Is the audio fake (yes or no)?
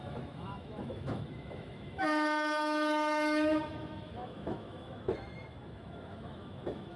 yes